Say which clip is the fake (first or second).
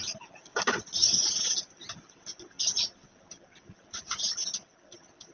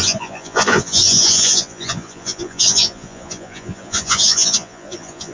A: second